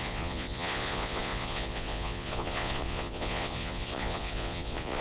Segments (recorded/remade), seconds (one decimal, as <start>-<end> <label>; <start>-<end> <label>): 0.0-5.0 remade